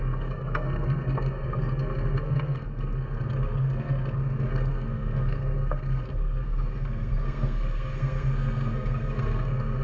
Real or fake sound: fake